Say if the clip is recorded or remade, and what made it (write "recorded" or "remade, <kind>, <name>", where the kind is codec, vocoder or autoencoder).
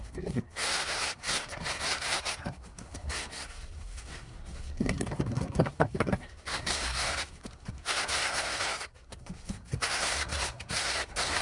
remade, codec, SNAC